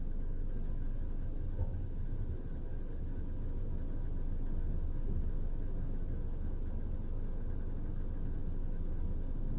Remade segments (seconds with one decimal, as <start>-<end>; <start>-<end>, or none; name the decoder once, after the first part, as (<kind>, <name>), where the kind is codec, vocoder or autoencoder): none